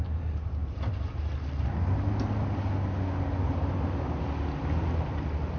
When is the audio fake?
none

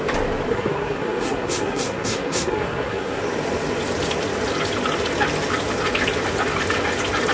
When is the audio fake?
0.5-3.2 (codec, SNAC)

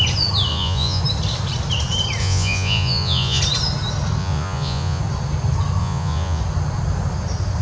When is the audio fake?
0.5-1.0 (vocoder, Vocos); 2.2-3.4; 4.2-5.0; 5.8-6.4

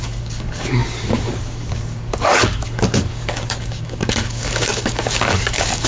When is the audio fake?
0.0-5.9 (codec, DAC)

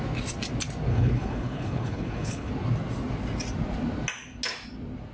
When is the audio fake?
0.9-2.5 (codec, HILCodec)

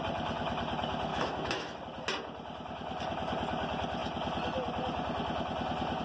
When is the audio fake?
1.1-1.8 (autoencoder, DAC-VAE)

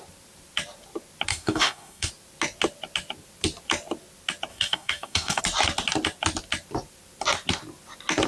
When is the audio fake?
1.3-2.1 (codec, DAC); 4.5-5.4

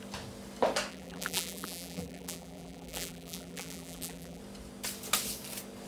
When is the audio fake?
0.9-4.4 (vocoder, BigVGAN v2)